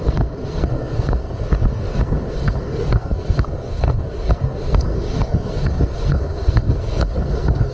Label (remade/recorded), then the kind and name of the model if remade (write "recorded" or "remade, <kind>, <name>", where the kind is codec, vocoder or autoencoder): remade, codec, SNAC